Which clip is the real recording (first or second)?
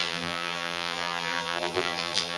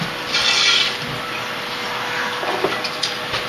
second